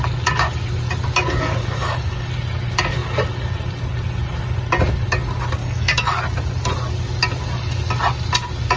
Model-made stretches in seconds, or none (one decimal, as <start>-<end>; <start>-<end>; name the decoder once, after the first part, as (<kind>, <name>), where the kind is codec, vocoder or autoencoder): 1.6-2.3 (codec, DAC); 5.6-6.2